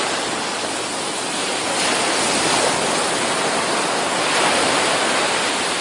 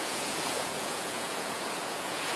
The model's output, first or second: second